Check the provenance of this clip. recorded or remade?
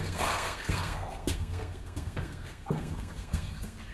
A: remade